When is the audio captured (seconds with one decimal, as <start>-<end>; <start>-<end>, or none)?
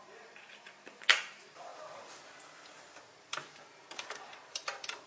1.7-3.2